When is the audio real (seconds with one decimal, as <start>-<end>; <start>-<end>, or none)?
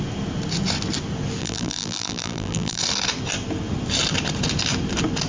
0.0-1.4; 2.8-5.3